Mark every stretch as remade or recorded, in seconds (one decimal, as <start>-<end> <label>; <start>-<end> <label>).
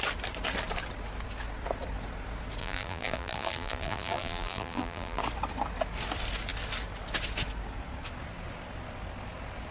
0.0-2.6 recorded; 2.6-5.2 remade; 5.2-9.7 recorded